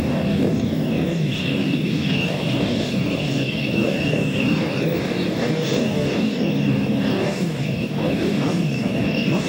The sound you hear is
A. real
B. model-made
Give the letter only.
B